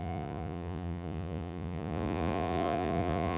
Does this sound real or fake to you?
fake